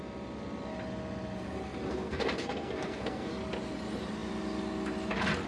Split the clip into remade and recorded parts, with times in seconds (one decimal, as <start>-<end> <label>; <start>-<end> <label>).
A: 0.0-1.9 recorded; 1.9-3.3 remade; 3.3-5.5 recorded